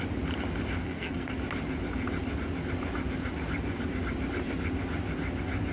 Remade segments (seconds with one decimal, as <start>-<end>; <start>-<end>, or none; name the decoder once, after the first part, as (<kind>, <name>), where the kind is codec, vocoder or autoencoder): 0.8-1.3 (codec, SNAC)